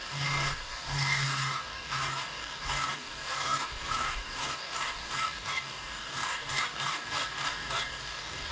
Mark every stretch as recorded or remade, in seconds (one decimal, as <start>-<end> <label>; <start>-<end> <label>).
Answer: 0.0-8.5 remade